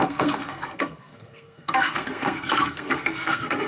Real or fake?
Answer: fake